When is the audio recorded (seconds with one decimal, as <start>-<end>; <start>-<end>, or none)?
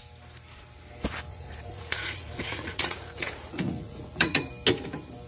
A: 0.0-1.3; 4.5-5.3